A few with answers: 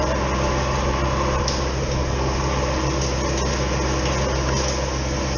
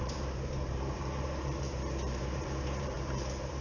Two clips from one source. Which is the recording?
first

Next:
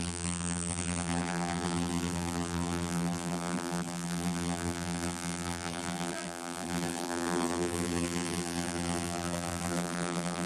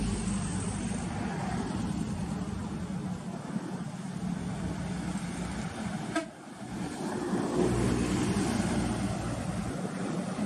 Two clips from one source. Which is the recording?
second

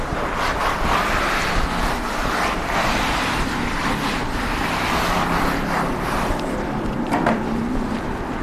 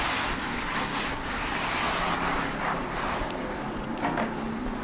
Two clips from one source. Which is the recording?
second